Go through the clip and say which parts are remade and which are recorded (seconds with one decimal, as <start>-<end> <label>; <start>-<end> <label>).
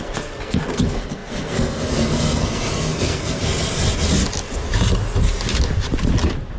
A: 0.0-3.4 remade; 3.4-6.6 recorded